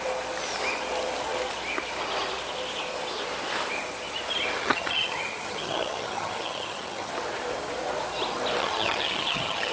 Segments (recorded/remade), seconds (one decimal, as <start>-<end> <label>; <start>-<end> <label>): 0.0-4.6 recorded; 4.6-7.1 remade; 7.1-8.6 recorded; 8.6-9.7 remade